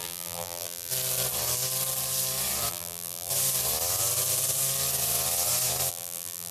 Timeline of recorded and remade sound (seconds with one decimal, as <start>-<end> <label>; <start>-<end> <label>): 0.0-0.9 remade; 0.9-2.7 recorded; 2.7-3.3 remade; 3.3-5.9 recorded; 5.9-6.5 remade